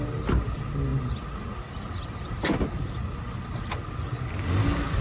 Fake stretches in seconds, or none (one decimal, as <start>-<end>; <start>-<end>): none